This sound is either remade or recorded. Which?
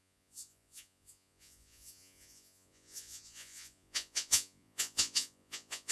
remade